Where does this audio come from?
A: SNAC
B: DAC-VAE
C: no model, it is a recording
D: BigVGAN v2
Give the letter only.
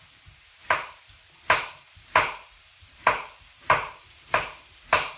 D